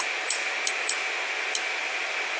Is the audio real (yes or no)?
yes